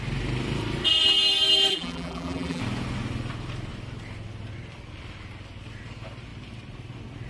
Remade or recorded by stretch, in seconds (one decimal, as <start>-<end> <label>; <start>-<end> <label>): 0.0-1.7 recorded; 1.7-2.6 remade; 2.6-7.3 recorded